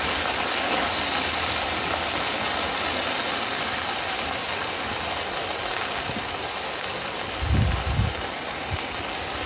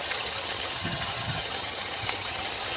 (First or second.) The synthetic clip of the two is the second